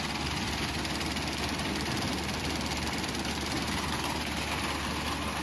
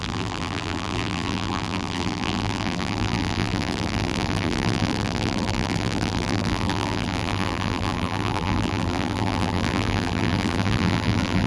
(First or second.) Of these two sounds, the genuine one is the first